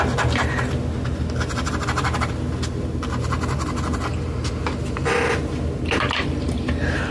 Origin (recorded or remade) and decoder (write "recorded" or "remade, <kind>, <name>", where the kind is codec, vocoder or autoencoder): recorded